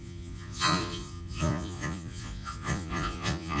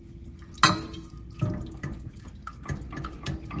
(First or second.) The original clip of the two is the second